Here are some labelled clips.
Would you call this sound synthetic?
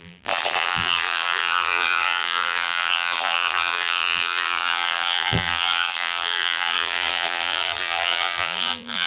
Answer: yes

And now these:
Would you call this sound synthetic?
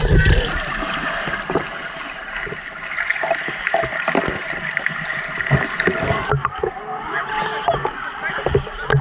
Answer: no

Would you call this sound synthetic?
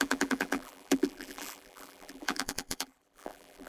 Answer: yes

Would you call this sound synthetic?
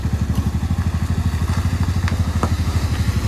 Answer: no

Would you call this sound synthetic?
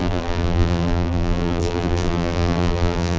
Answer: yes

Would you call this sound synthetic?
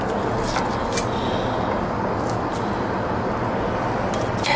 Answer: no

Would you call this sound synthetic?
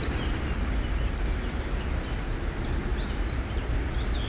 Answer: no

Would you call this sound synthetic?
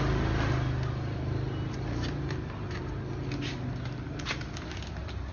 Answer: no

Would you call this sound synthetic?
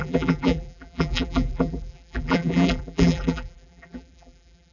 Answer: yes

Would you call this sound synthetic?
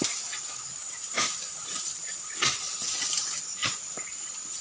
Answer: yes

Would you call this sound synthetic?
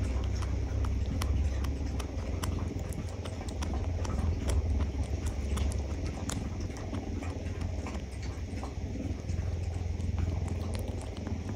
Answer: no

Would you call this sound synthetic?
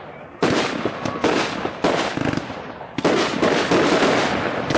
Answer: no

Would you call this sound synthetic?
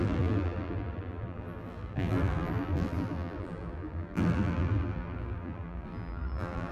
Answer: yes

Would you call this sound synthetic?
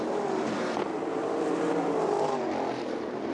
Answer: yes